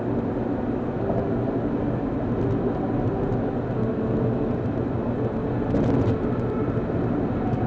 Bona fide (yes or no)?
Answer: yes